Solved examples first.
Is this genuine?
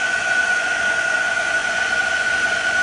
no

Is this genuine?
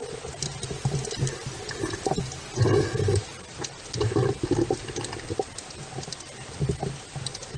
yes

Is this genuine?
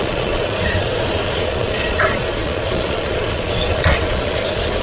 no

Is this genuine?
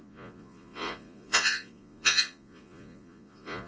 no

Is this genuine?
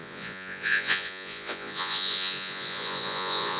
no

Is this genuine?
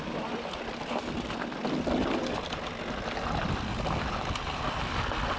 yes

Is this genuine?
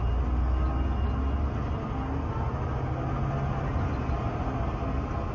yes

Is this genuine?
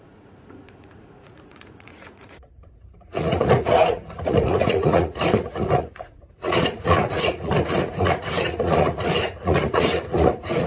no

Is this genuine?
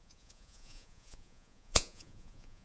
no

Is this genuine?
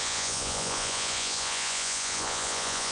no